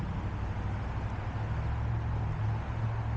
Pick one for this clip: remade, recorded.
recorded